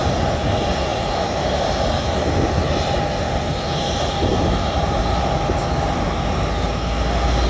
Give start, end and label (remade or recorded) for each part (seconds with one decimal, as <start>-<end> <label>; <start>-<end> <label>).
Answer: 0.0-0.9 recorded; 0.9-2.0 remade; 2.0-4.3 recorded; 4.3-5.0 remade; 5.0-7.5 recorded